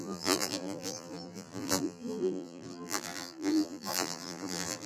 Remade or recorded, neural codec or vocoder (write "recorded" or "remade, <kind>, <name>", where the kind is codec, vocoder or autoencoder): remade, vocoder, BigVGAN v2